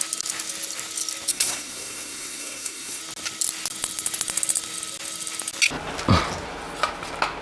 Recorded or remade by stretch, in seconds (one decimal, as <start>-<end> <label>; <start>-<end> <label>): 0.0-1.3 recorded; 1.3-3.0 remade; 3.0-7.4 recorded